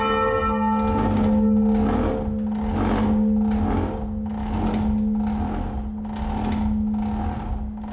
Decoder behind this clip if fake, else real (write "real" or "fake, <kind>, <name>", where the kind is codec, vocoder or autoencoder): real